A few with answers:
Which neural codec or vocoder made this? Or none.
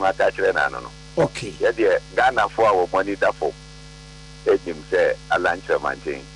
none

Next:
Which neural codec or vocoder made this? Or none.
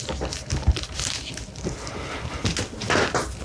none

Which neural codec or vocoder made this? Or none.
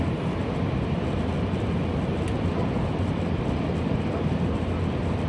none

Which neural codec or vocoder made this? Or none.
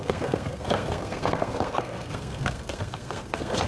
codec, SNAC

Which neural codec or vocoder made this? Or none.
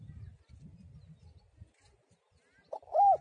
none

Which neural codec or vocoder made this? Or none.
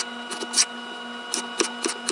none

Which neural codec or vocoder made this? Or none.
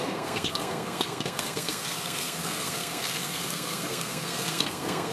codec, SNAC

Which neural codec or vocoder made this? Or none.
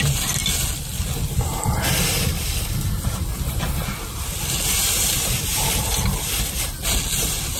none